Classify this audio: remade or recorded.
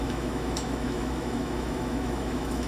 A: remade